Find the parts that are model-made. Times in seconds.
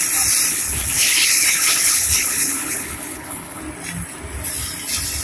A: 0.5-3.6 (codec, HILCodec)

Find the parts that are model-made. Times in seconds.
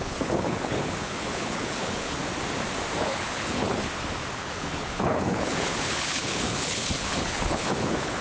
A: 0.0-2.2 (codec, HILCodec); 3.0-3.7; 4.3-8.2